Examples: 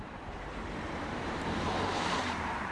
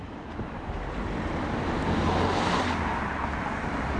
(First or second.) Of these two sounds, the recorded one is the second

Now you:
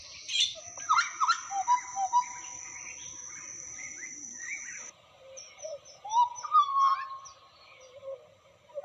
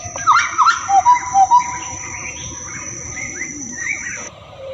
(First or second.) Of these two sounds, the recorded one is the first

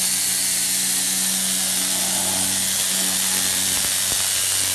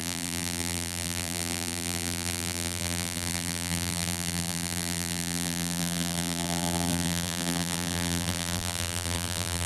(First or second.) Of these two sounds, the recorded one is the first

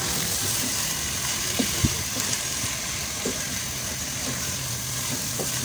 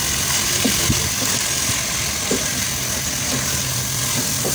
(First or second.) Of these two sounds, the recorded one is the second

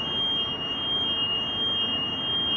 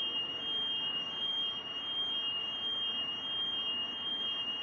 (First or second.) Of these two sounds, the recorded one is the first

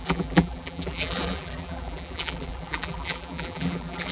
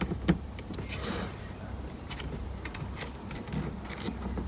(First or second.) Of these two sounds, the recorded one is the second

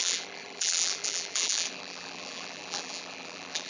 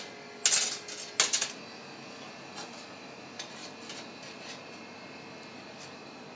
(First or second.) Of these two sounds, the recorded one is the second